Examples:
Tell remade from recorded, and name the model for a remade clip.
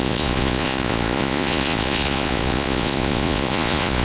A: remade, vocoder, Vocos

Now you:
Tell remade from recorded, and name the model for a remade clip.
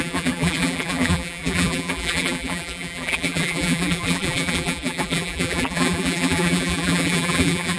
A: remade, vocoder, BigVGAN v2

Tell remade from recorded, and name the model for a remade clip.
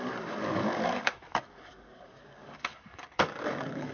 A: remade, codec, DAC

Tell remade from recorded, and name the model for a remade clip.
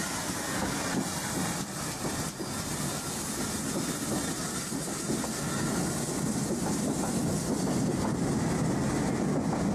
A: recorded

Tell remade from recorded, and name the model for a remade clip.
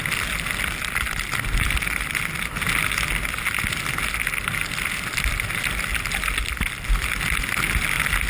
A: recorded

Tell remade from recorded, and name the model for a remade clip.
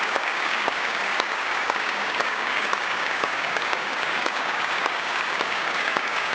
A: remade, codec, DAC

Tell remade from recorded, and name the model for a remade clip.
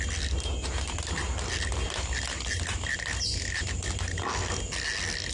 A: recorded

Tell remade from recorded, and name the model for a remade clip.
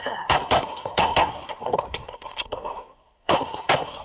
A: remade, codec, SNAC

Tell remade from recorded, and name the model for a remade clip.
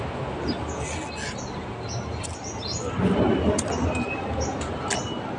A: recorded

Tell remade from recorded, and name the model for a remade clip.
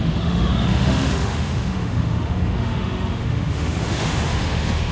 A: remade, autoencoder, DAC-VAE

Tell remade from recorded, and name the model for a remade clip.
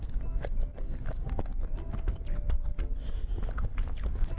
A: recorded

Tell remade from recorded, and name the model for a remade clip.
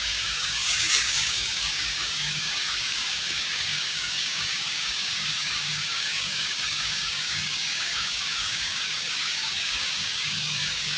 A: remade, codec, DAC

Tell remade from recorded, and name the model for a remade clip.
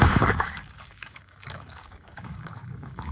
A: remade, codec, DAC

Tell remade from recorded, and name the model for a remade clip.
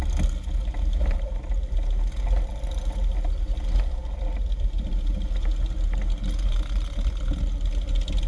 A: recorded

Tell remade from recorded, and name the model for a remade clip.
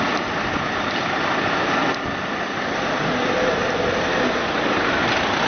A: recorded